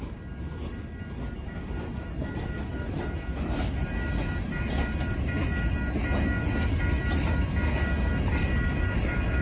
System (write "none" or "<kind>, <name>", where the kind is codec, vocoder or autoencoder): none